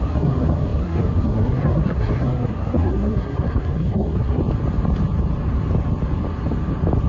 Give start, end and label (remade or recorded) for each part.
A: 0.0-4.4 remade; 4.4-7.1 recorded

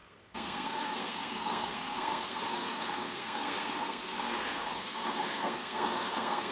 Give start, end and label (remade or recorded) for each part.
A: 0.0-6.5 remade

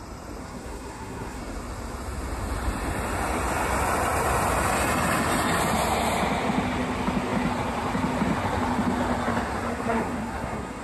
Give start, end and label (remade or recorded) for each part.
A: 0.0-0.4 recorded; 0.4-1.4 remade; 1.4-9.7 recorded; 9.7-10.8 remade

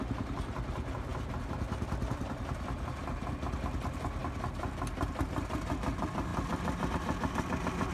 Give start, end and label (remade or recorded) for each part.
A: 0.0-7.9 recorded

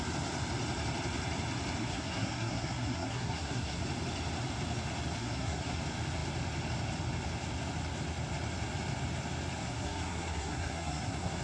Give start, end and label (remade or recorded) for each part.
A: 0.0-1.8 recorded; 1.8-3.8 remade; 3.8-5.2 recorded; 5.2-5.8 remade; 5.8-9.6 recorded; 9.6-11.4 remade

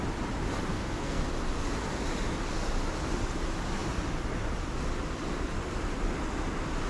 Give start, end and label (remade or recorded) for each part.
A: 0.0-0.7 recorded; 0.7-1.3 remade; 1.3-6.9 recorded